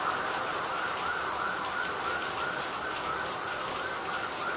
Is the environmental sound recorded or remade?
recorded